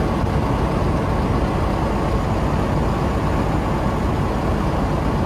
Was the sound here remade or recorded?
recorded